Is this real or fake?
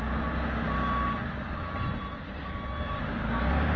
real